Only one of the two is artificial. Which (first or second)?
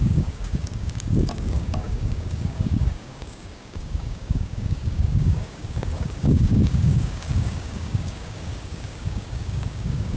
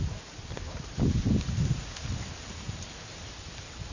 first